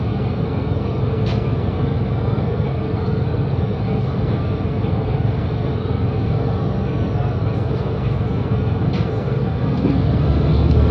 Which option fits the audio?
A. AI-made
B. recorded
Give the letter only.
A